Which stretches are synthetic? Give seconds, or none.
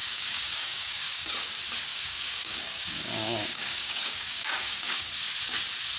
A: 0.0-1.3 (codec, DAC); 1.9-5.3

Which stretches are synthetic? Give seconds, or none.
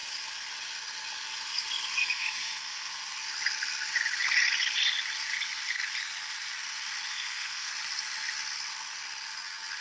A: 2.0-2.9 (codec, SNAC); 7.1-7.7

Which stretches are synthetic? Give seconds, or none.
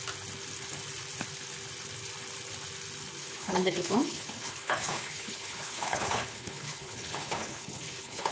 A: 3.2-8.3 (codec, HILCodec)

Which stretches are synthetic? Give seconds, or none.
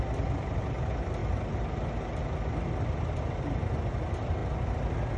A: 4.4-5.2 (vocoder, BigVGAN v2)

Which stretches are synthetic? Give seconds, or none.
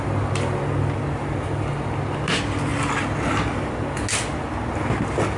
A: none